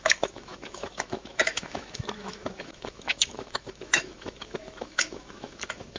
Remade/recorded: remade